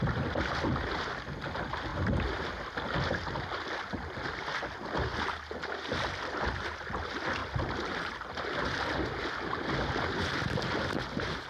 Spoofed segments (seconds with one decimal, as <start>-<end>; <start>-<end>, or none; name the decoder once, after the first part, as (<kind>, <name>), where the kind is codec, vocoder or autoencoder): 1.9-3.1 (vocoder, BigVGAN v2)